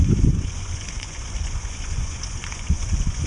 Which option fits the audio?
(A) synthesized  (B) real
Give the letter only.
A